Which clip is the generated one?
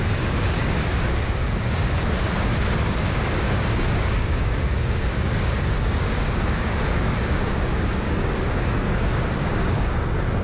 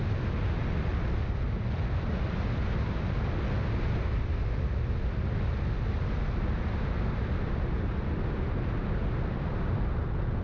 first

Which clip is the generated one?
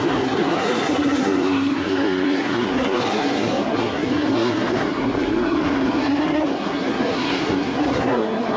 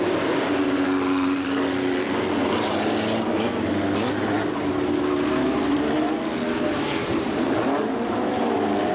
first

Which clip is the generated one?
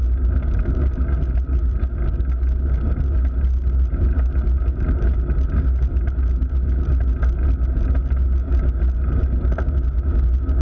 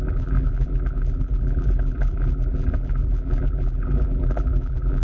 second